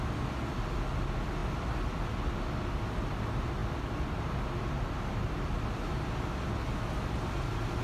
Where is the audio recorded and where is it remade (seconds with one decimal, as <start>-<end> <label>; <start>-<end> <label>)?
0.0-7.8 recorded